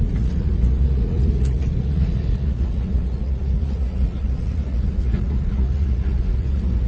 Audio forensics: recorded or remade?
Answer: remade